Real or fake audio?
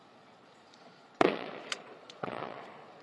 fake